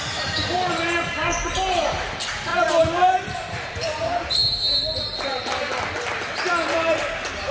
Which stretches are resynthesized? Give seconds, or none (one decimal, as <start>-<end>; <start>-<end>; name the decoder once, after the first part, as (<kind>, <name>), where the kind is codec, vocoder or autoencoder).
0.0-2.5 (vocoder, BigVGAN v2); 3.2-4.4; 6.5-7.5